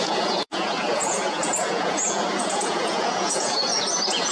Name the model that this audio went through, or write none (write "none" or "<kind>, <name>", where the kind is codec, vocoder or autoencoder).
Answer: vocoder, Vocos